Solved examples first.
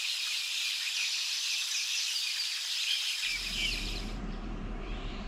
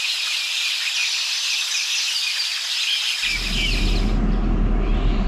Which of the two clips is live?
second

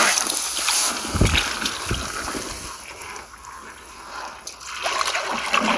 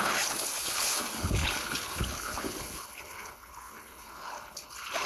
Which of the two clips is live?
first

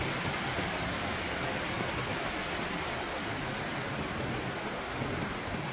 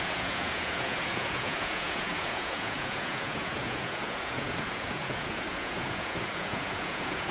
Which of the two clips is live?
first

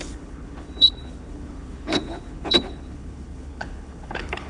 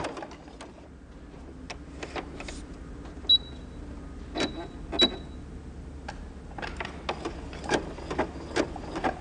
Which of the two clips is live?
second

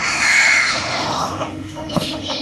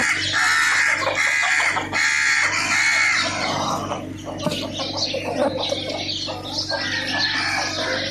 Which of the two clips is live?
second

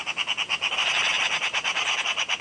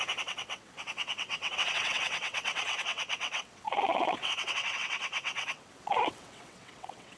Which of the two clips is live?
first